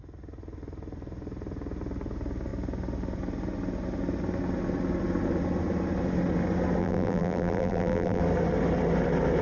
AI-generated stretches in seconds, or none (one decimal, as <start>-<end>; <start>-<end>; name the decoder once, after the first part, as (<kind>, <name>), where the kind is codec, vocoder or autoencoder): 6.8-8.2 (vocoder, BigVGAN v2)

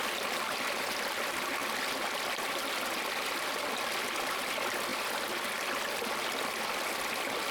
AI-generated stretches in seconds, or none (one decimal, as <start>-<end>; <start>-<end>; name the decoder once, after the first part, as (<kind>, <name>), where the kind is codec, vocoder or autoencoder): 0.0-1.6 (vocoder, BigVGAN v2); 4.3-4.9

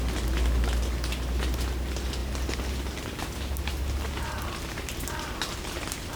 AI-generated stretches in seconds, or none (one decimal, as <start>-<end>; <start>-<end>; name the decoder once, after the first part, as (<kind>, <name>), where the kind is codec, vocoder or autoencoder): none

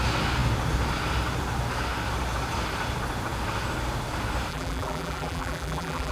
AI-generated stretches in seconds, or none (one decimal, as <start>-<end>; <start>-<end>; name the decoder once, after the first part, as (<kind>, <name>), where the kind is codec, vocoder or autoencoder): 4.5-6.1 (vocoder, BigVGAN v2)

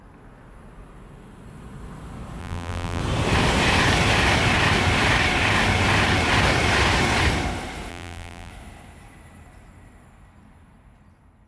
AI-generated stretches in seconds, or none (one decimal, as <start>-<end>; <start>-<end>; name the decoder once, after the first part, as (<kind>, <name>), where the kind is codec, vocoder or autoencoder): 2.4-3.0 (vocoder, BigVGAN v2); 7.9-8.5

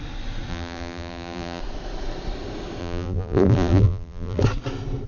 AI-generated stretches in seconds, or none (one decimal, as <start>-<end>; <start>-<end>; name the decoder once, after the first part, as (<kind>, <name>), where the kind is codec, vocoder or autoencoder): 0.5-1.6 (vocoder, BigVGAN v2); 2.8-4.4